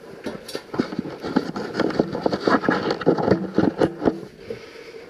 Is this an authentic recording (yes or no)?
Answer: yes